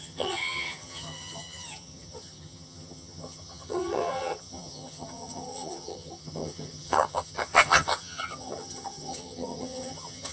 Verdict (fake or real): fake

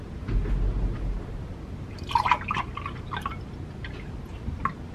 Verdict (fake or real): real